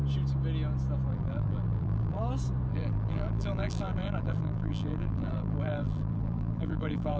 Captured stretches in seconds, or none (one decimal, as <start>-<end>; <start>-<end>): 0.0-1.1; 2.2-2.7